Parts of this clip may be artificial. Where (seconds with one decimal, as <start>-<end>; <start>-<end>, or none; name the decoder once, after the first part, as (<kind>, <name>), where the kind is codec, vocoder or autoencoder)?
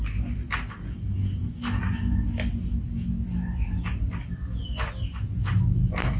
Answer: none